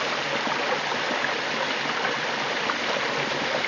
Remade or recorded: recorded